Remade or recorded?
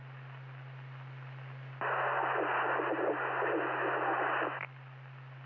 recorded